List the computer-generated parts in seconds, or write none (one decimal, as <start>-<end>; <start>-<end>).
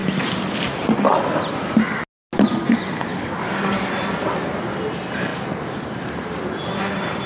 3.1-3.9